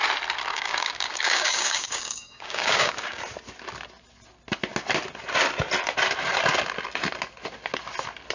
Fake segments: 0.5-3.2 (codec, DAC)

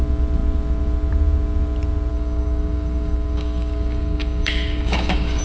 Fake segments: 2.1-5.4 (codec, DAC)

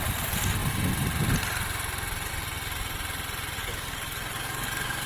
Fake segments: 3.6-5.1 (codec, DAC)

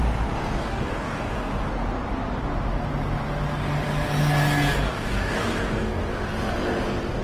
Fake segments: 0.6-1.5 (codec, DAC); 4.9-6.0